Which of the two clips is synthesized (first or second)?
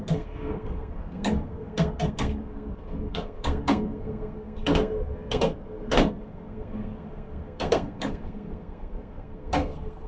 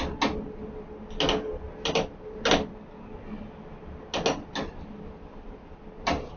first